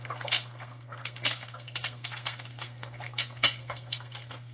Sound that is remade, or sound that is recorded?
remade